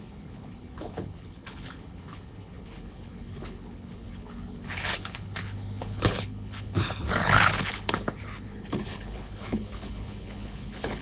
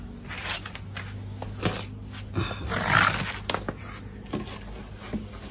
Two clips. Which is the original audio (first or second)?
second